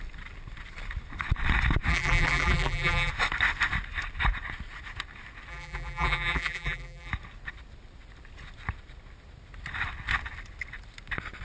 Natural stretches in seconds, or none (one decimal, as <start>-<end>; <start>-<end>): 0.0-1.9; 3.1-5.5; 7.1-11.4